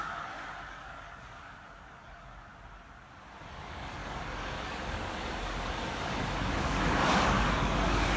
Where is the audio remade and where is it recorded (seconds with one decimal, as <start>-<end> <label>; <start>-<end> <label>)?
0.0-2.5 remade; 2.5-3.5 recorded; 3.5-8.2 remade